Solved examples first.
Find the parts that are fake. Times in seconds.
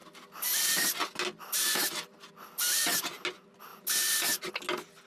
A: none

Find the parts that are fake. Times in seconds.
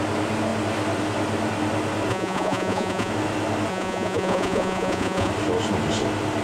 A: 2.1-3.1 (vocoder, Vocos); 3.7-5.3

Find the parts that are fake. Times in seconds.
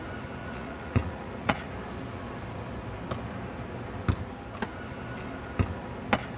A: 0.4-1.7 (vocoder, Vocos)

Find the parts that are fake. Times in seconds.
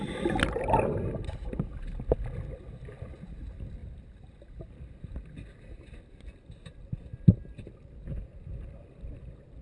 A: none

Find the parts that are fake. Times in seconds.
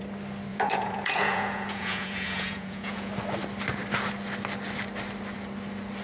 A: 0.5-3.1 (vocoder, Vocos)